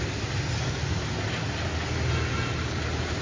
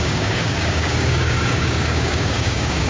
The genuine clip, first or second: first